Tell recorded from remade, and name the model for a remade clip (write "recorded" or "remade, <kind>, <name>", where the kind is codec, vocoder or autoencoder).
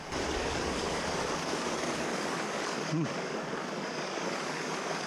remade, codec, DAC